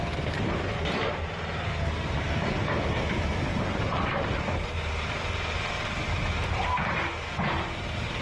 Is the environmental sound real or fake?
fake